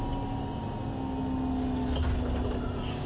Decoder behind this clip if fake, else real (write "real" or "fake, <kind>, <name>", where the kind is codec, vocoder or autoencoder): real